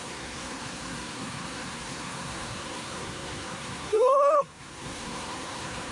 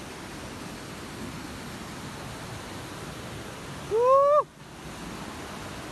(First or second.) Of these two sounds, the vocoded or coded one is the first